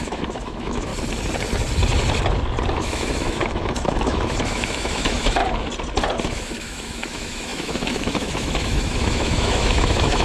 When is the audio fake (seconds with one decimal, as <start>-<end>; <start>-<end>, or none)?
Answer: 0.0-0.9; 2.7-5.4; 6.2-10.2